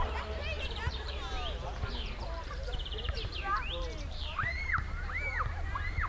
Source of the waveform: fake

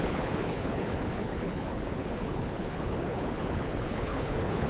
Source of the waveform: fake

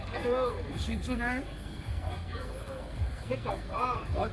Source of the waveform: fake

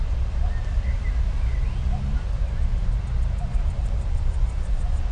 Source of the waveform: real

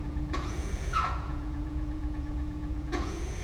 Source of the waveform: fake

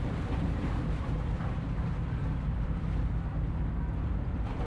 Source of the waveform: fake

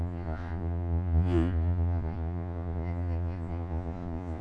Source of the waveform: fake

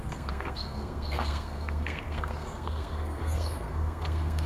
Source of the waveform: fake